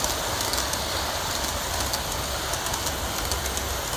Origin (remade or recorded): recorded